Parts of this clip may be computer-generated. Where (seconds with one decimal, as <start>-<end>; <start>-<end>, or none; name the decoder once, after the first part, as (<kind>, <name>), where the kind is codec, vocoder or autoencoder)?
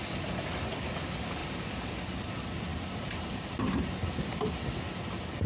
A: 1.4-1.9 (vocoder, BigVGAN v2); 2.7-3.9